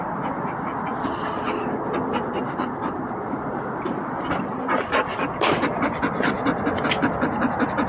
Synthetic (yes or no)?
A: no